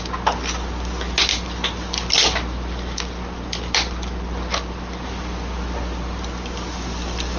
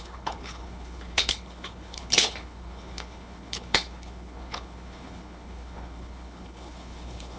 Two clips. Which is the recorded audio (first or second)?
first